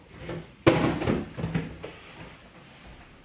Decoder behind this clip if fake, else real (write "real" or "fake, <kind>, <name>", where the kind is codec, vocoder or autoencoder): real